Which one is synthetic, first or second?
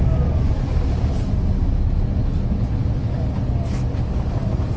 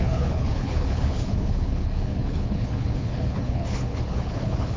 second